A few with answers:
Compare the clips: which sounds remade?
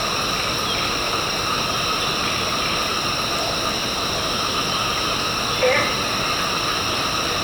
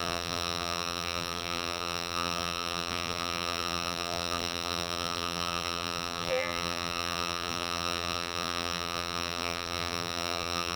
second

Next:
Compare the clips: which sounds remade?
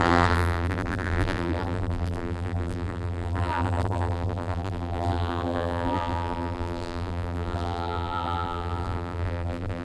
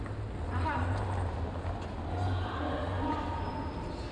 first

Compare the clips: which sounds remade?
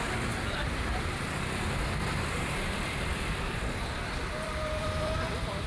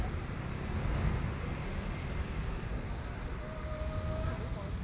first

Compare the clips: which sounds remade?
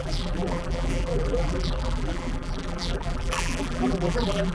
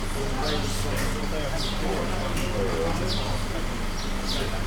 first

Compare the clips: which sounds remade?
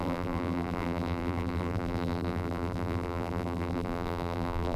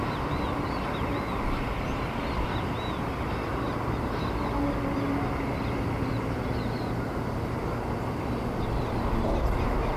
first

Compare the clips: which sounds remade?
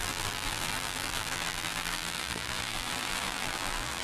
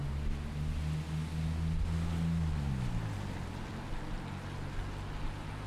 first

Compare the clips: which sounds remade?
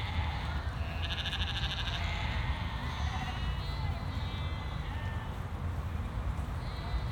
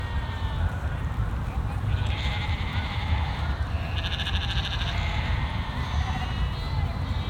second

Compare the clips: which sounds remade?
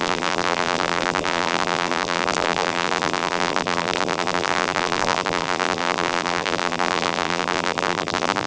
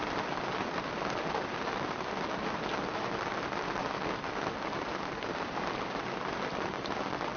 first